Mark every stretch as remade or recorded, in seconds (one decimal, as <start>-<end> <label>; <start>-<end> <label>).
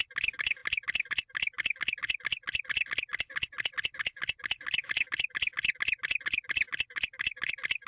0.0-7.9 recorded